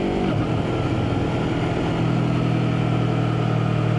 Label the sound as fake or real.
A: real